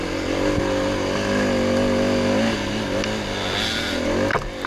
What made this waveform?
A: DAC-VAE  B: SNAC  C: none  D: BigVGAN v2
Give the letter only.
C